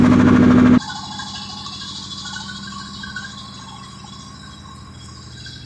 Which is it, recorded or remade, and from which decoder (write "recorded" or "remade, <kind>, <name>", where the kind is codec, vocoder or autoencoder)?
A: recorded